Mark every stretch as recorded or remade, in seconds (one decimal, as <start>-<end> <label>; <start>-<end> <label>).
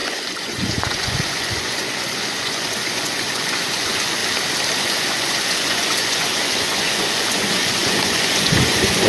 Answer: 0.0-4.2 remade; 4.2-4.8 recorded; 4.8-9.1 remade